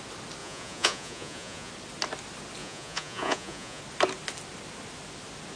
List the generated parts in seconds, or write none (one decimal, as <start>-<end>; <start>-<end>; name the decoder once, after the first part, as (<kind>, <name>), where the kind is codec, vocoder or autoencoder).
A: 0.4-1.7 (vocoder, Vocos); 2.6-3.8